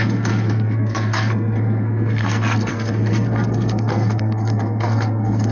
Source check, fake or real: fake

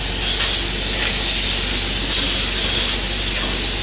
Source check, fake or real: real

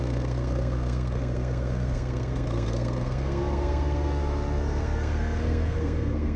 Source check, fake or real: fake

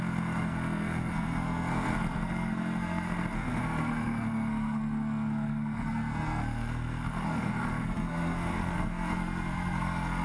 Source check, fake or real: fake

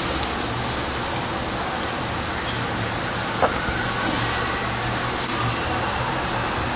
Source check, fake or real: real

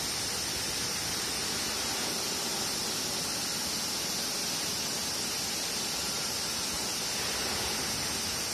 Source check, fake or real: real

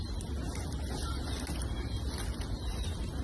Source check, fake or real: real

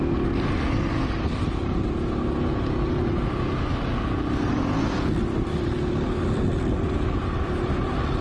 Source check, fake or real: real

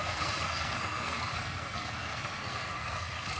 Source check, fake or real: fake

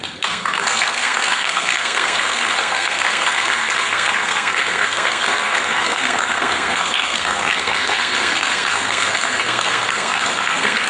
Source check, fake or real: fake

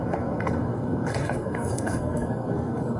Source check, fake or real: fake